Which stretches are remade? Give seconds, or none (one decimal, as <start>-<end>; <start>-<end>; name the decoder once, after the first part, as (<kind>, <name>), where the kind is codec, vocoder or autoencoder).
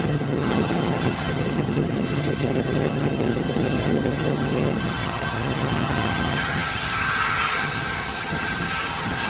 0.0-9.3 (vocoder, HiFi-GAN)